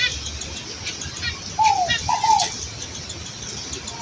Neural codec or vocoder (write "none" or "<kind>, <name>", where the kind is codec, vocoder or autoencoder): none